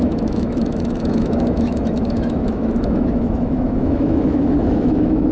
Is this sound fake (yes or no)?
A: yes